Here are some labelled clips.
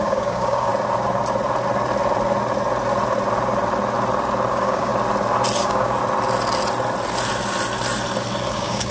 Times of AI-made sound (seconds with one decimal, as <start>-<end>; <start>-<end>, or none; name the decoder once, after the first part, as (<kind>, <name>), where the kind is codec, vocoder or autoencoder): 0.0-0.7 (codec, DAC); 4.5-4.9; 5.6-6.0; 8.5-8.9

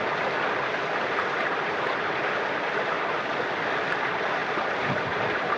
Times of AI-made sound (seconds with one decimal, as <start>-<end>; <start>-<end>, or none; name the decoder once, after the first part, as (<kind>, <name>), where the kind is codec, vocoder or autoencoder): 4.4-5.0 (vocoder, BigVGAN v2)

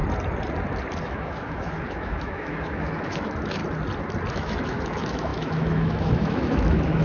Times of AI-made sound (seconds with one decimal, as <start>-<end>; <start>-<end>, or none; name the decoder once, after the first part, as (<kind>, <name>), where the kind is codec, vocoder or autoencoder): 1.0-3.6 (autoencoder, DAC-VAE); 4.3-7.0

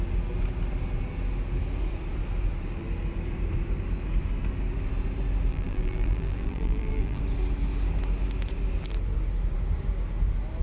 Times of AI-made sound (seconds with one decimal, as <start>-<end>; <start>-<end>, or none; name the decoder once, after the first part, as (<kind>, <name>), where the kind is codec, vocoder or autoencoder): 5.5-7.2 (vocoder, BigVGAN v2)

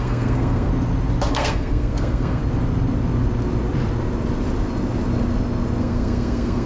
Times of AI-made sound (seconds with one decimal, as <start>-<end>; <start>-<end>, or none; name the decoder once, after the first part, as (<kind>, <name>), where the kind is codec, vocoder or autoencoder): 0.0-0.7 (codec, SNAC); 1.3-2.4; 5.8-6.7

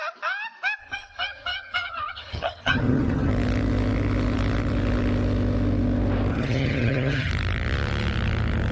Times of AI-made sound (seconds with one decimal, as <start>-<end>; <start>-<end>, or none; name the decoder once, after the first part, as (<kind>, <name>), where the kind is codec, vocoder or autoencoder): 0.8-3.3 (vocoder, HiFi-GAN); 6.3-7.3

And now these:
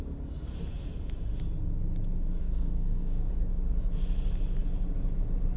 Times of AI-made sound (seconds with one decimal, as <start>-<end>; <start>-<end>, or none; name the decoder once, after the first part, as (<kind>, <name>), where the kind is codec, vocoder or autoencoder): 2.4-3.3 (codec, SNAC)

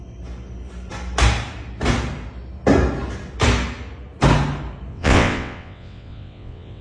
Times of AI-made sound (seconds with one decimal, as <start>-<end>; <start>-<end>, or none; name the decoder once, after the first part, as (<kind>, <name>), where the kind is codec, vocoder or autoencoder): 4.9-6.8 (vocoder, WaveNeXt)